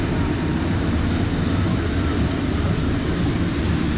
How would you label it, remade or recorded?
recorded